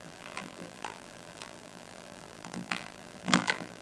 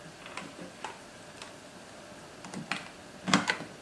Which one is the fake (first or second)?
first